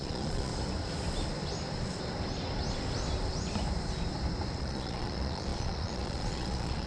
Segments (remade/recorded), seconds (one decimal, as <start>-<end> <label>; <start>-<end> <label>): 0.0-0.5 remade; 0.5-4.6 recorded; 4.6-6.9 remade